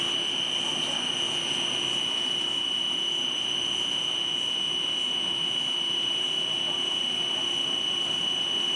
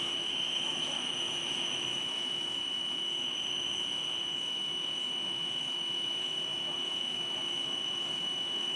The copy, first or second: second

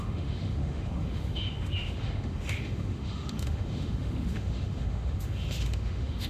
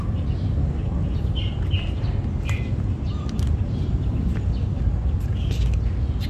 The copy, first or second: first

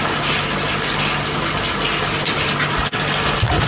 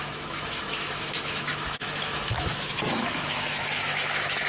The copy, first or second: second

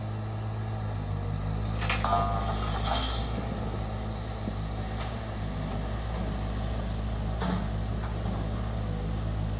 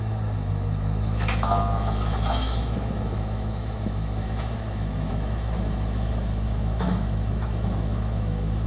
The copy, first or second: second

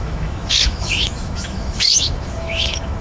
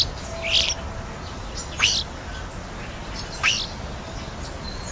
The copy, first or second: first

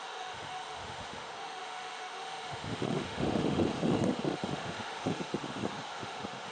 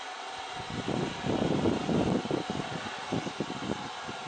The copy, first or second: first